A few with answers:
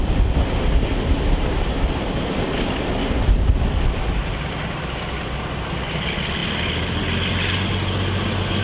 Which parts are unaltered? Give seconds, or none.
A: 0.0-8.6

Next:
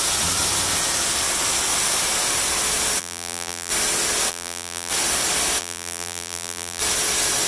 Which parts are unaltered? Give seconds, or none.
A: 0.0-3.0; 3.7-4.3; 4.9-5.6; 6.8-7.5

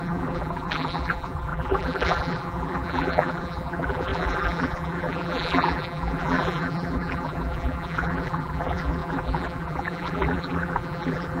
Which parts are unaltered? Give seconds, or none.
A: none

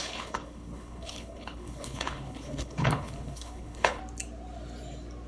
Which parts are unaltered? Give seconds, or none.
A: 4.0-5.3

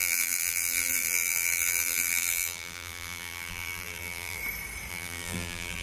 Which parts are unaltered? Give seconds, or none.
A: 4.4-4.9

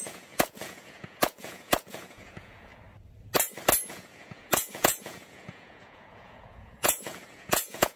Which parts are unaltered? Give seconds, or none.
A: 2.7-3.9